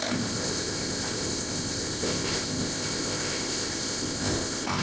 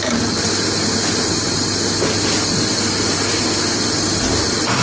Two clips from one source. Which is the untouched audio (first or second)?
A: second